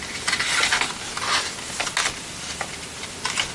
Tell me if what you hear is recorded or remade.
recorded